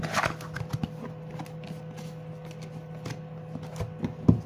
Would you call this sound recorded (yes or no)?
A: yes